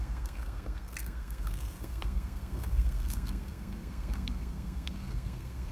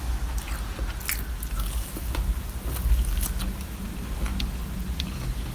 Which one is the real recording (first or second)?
second